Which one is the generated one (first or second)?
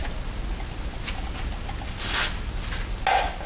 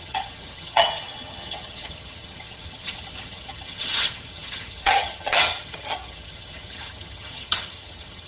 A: second